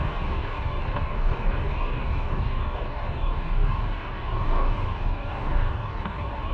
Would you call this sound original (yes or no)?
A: no